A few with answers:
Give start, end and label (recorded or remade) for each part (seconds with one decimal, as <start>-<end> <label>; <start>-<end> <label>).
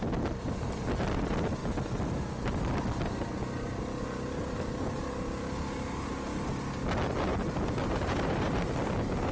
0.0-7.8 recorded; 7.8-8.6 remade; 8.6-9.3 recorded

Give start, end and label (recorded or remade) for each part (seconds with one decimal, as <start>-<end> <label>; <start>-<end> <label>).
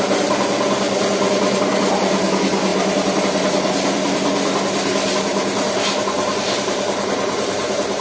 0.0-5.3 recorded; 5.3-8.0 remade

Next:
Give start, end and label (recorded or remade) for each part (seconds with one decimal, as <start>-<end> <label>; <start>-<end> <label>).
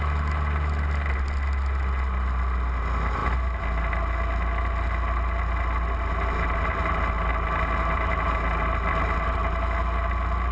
0.0-10.5 recorded